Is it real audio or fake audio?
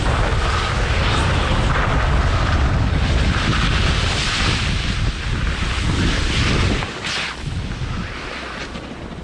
real